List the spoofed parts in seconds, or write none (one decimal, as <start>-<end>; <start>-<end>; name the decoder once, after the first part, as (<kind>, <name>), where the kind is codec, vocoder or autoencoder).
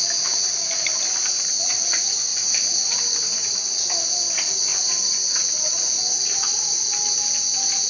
none